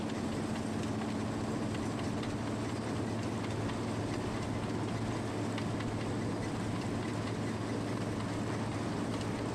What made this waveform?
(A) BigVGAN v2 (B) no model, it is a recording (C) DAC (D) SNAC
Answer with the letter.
B